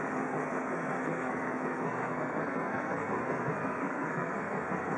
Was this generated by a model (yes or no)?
yes